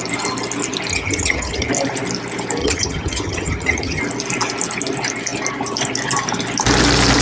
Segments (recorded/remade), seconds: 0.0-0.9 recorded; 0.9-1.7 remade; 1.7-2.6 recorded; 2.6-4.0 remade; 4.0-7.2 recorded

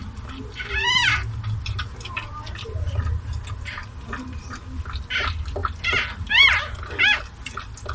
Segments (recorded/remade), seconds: 0.0-7.9 recorded

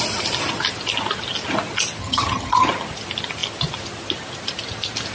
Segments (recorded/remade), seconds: 0.0-2.0 recorded; 2.0-2.7 remade; 2.7-5.1 recorded

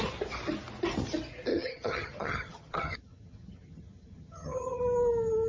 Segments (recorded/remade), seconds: 0.0-1.5 recorded; 1.5-4.8 remade; 4.8-5.5 recorded

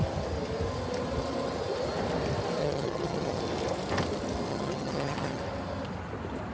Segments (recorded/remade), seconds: 0.0-2.6 recorded; 2.6-3.4 remade; 3.4-4.5 recorded; 4.5-5.4 remade; 5.4-6.5 recorded

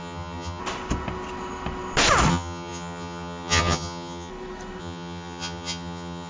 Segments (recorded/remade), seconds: 0.0-0.6 remade; 0.6-2.3 recorded; 2.3-4.3 remade; 4.3-4.8 recorded; 4.8-6.3 remade

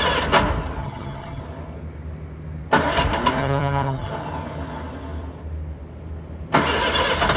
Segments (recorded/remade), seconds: 0.0-0.8 recorded; 0.8-1.4 remade; 1.4-3.4 recorded; 3.4-4.1 remade; 4.1-7.4 recorded